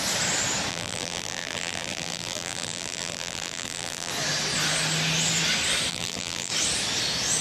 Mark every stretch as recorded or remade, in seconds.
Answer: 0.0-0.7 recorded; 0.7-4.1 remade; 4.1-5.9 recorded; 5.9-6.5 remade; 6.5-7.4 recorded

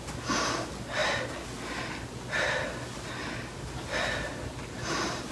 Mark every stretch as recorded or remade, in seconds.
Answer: 0.0-5.3 recorded